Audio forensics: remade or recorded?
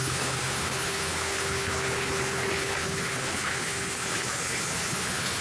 remade